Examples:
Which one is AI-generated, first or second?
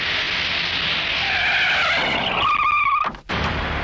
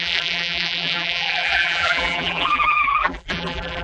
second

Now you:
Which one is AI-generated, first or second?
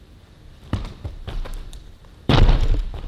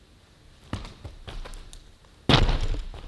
first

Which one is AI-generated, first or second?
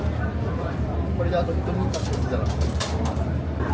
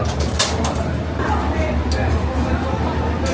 first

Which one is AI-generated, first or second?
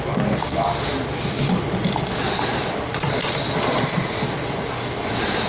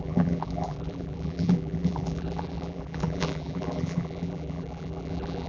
second